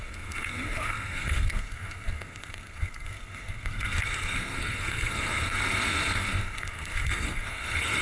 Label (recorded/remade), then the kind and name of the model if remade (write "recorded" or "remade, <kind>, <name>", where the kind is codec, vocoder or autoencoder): remade, codec, SNAC